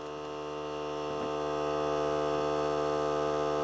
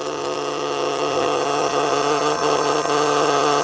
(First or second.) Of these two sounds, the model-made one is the second